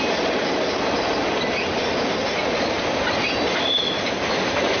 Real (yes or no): yes